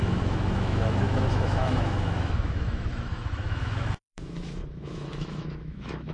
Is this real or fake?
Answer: fake